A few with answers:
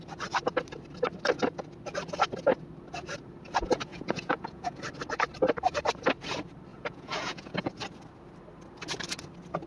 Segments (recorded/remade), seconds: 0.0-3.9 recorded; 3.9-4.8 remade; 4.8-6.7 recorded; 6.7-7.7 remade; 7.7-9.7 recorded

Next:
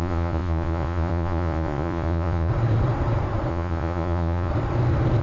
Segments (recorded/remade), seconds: 0.0-2.5 remade; 2.5-3.5 recorded; 3.5-4.5 remade; 4.5-5.2 recorded